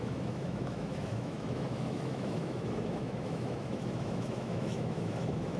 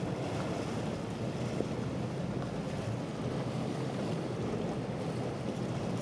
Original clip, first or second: second